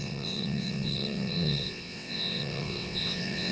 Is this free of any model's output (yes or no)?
no